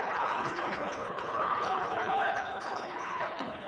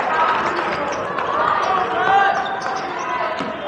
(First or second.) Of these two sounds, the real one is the second